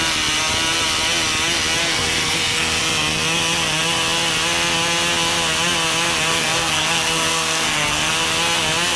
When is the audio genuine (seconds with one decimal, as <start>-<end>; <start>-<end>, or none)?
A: 0.0-1.8; 2.8-6.3; 8.1-9.0